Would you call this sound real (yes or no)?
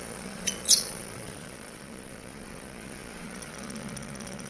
no